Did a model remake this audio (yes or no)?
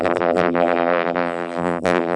yes